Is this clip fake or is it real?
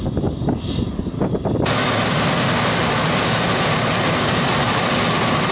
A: real